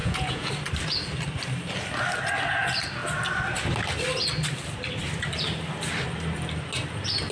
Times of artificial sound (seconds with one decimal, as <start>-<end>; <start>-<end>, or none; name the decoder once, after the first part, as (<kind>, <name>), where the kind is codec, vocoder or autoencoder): 0.0-0.5 (vocoder, Vocos)